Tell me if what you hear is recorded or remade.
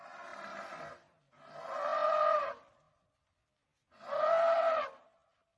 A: recorded